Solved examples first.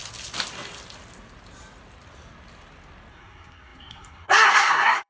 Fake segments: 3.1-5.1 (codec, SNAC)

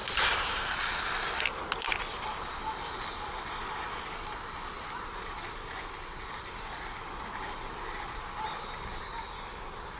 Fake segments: none

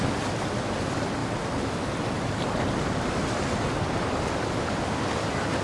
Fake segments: none

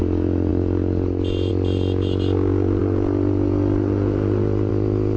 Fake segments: none